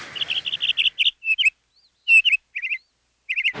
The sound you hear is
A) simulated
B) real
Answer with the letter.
B